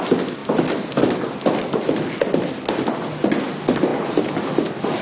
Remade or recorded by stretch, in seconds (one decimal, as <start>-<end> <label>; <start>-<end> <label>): 0.0-5.0 recorded